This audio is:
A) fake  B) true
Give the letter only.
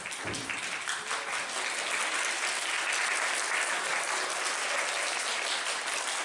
B